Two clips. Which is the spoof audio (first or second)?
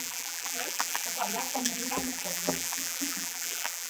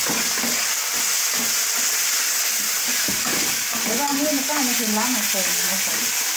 first